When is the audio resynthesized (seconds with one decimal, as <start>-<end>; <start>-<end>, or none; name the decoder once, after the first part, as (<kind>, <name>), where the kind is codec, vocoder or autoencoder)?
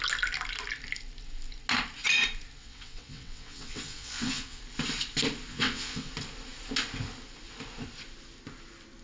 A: 2.6-4.6 (vocoder, WaveNeXt); 5.5-6.1